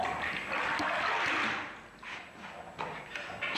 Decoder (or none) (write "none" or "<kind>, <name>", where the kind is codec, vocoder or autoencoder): none